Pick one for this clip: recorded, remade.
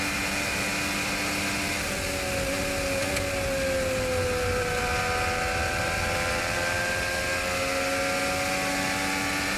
recorded